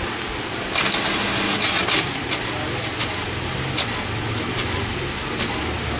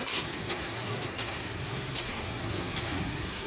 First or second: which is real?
first